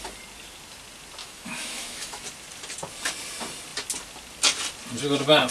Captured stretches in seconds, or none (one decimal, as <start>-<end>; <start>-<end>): 0.0-1.2; 2.2-5.5